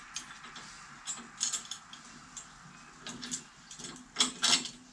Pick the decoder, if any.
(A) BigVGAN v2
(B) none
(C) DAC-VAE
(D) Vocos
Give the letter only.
B